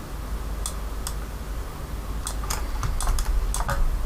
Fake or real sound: real